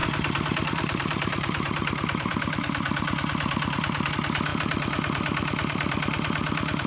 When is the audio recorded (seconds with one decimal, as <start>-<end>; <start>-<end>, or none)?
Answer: 4.1-4.5